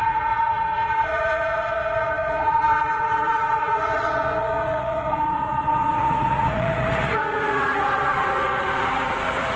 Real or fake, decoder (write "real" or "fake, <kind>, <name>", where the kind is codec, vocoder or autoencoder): fake, vocoder, Vocos